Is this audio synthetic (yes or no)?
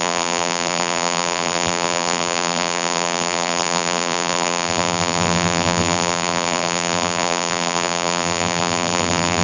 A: yes